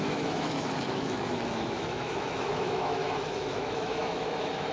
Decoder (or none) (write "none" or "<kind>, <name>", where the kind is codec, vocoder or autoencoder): autoencoder, DAC-VAE